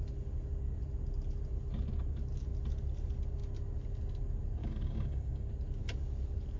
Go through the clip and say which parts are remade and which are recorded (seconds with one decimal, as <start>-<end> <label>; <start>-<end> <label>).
0.0-4.6 recorded; 4.6-5.5 remade; 5.5-6.6 recorded